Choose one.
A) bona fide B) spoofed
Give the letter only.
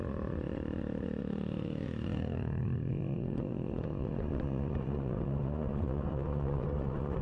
B